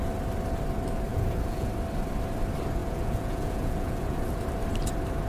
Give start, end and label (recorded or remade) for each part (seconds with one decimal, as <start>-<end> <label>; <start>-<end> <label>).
0.0-1.1 recorded; 1.1-1.7 remade; 1.7-2.8 recorded; 2.8-4.4 remade; 4.4-5.3 recorded